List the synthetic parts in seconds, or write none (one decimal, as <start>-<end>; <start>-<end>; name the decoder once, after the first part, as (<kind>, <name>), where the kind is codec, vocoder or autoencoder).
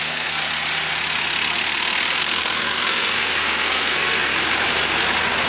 0.0-0.4 (codec, SNAC); 2.2-4.3